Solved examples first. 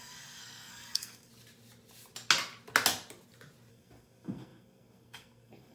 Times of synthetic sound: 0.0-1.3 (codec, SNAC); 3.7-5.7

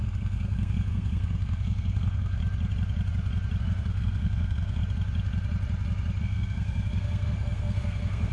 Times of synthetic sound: 0.0-2.4 (codec, SNAC); 3.6-4.8; 6.2-8.3